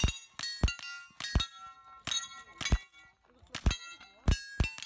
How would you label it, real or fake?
real